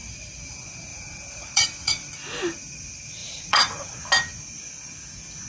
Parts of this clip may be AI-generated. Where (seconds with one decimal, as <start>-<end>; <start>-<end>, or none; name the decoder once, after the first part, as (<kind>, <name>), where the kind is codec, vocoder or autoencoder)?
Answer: 0.9-2.1 (vocoder, Vocos); 3.2-4.0

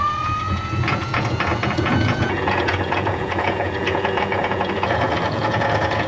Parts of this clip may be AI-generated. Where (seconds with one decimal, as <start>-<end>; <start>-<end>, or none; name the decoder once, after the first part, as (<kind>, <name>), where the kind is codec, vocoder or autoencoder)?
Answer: 0.0-6.1 (vocoder, Vocos)

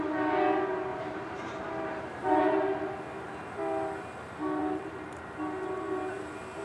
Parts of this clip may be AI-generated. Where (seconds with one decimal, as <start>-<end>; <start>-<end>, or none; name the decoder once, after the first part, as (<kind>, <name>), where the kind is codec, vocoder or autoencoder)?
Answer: 0.9-2.4 (vocoder, BigVGAN v2)